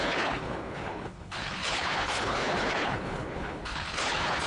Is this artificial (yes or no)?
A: yes